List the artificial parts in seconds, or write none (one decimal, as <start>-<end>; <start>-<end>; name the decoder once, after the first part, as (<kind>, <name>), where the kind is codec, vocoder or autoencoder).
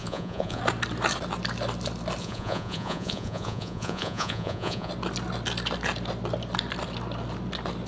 0.0-0.6 (vocoder, Vocos); 2.2-4.9